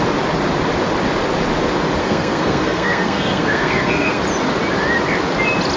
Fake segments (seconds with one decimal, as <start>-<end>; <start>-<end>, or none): 2.0-4.2